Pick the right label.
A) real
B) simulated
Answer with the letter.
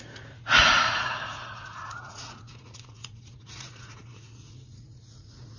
B